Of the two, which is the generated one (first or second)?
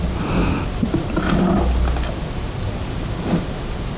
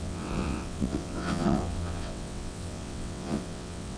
second